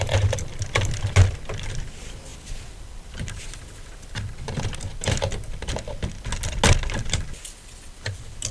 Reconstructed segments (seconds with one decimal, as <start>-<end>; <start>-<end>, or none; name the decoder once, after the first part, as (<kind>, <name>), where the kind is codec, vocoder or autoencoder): none